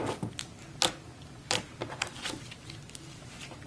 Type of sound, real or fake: real